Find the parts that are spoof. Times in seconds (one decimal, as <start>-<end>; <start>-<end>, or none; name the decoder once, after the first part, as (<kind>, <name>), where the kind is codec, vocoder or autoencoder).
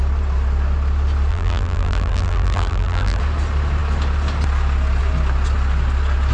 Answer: 1.3-3.2 (vocoder, BigVGAN v2)